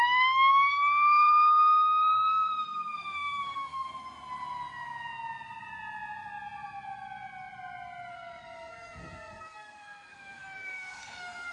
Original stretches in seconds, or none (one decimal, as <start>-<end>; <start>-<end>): 3.9-8.1